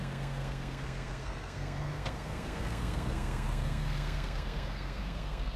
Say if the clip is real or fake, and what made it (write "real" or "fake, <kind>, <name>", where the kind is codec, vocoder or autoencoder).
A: fake, codec, SNAC